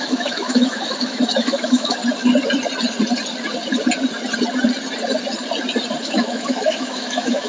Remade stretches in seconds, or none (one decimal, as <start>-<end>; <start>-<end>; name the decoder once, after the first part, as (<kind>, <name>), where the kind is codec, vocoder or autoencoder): 0.0-2.0 (autoencoder, DAC-VAE); 6.0-7.5